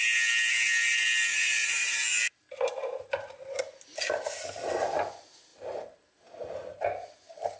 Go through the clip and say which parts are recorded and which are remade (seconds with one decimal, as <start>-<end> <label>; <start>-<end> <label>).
0.0-1.3 recorded; 1.3-3.6 remade; 3.6-7.6 recorded